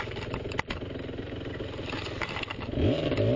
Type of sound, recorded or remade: recorded